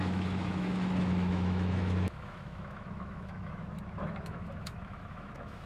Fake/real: fake